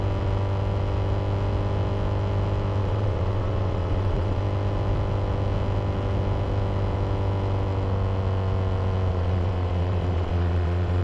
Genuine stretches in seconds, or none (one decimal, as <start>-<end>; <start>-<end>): 0.0-2.8; 4.4-9.1